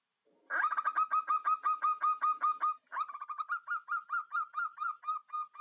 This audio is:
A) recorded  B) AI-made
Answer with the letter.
A